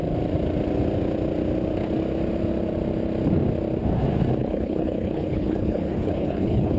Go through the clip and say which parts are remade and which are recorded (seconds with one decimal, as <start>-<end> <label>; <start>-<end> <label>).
0.0-4.4 recorded; 4.4-6.8 remade